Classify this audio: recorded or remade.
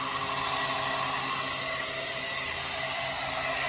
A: recorded